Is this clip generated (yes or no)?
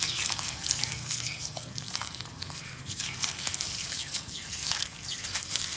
yes